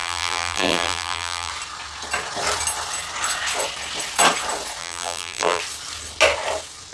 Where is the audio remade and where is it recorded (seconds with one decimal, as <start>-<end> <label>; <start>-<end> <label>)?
0.0-1.5 remade; 1.5-4.8 recorded; 4.8-5.6 remade; 5.6-6.9 recorded